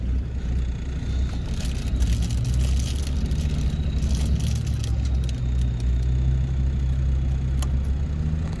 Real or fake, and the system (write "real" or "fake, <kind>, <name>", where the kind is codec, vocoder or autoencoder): real